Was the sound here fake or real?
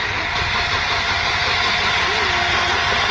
real